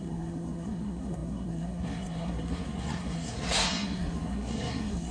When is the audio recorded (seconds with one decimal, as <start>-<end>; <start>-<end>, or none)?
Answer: none